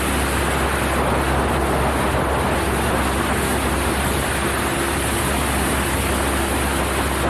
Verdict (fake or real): real